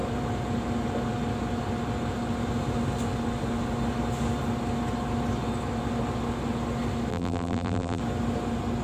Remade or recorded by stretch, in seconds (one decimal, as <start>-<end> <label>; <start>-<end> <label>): 0.0-7.1 recorded; 7.1-8.0 remade; 8.0-8.8 recorded